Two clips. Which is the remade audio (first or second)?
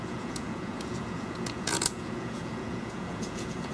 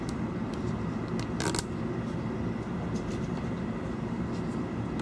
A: first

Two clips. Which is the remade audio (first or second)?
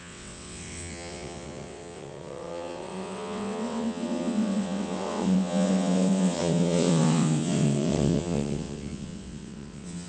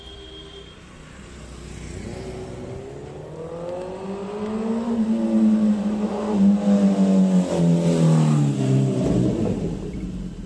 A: first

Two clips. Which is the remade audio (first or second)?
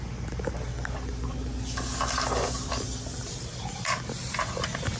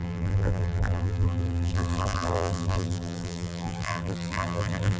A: second